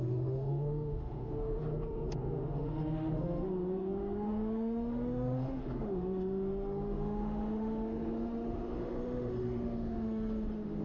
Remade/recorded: remade